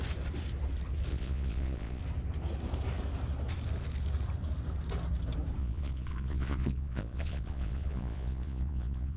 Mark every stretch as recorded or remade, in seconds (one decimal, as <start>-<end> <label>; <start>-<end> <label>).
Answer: 0.0-1.1 recorded; 1.1-2.0 remade; 2.0-5.6 recorded; 5.6-9.2 remade